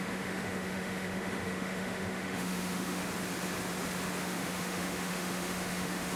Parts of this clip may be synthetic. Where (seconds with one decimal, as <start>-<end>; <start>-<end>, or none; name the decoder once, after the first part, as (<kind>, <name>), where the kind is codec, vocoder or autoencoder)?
0.0-3.0 (autoencoder, DAC-VAE); 4.2-6.2

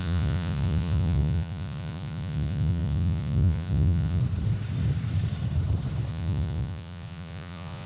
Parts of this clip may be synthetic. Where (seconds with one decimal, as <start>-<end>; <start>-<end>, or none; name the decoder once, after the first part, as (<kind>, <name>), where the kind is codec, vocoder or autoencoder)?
0.0-4.2 (vocoder, Vocos); 6.1-7.9

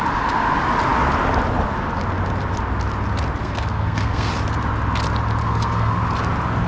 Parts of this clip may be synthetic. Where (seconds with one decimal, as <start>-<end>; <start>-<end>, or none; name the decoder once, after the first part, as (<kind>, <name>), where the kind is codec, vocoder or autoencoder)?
3.4-4.3 (codec, SNAC); 5.4-6.0

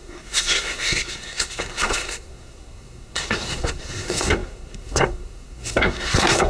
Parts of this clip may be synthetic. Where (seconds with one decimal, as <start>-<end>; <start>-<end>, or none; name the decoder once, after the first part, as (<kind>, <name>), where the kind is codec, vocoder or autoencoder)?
0.0-6.5 (codec, SNAC)

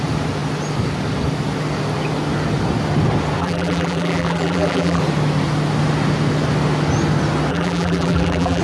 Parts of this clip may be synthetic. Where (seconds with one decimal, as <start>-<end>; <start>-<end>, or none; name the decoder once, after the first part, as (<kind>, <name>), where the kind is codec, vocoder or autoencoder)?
3.4-5.0 (vocoder, BigVGAN v2); 7.5-8.6

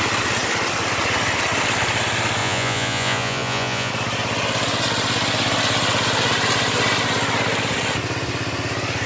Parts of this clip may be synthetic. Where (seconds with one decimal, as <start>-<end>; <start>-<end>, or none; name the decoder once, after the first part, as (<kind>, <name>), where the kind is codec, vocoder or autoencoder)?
2.4-3.9 (vocoder, Vocos)

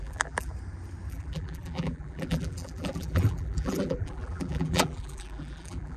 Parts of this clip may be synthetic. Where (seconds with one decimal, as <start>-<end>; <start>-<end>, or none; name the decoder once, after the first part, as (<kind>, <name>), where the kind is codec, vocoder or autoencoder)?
0.0-0.5 (vocoder, BigVGAN v2); 1.1-6.0

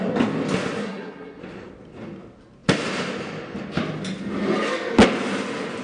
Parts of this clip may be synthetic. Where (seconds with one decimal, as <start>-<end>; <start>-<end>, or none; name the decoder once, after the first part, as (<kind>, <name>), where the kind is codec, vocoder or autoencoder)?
0.8-1.4 (codec, SNAC)